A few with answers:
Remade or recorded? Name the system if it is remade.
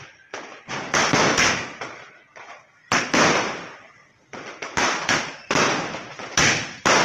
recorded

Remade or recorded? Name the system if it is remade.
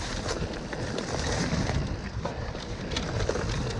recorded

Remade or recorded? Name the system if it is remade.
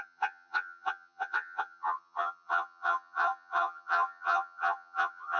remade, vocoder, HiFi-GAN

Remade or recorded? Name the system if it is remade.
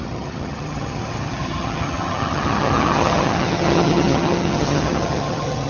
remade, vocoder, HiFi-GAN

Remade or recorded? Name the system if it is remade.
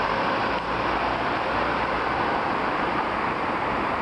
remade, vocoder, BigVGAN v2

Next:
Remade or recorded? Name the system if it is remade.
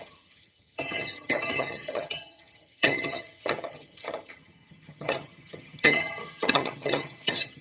remade, vocoder, HiFi-GAN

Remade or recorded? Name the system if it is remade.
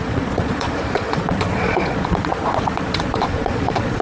remade, vocoder, Vocos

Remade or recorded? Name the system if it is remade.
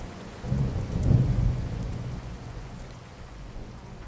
remade, vocoder, Vocos